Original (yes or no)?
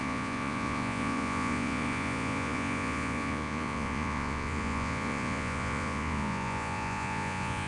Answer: no